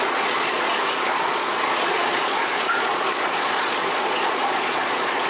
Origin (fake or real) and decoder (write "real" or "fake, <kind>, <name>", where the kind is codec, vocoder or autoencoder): fake, vocoder, Vocos